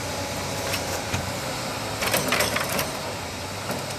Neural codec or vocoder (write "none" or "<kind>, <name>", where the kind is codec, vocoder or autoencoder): vocoder, BigVGAN v2